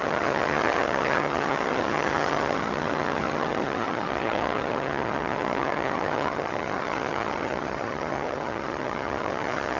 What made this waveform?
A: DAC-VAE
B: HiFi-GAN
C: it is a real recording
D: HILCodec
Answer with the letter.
B